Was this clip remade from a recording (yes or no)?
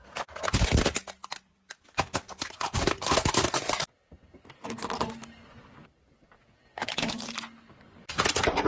no